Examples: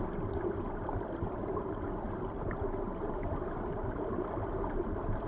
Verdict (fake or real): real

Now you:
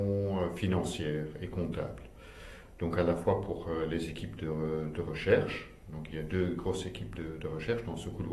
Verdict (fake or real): fake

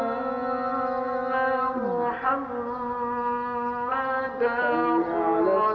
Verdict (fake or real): real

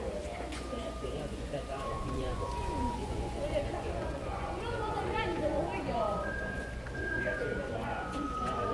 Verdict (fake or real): fake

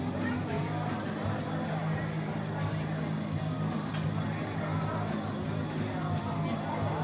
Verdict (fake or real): real